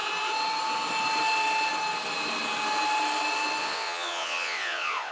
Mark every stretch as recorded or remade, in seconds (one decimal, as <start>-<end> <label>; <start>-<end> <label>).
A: 0.0-3.6 recorded; 3.6-5.1 remade